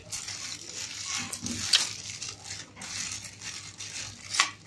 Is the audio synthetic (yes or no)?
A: no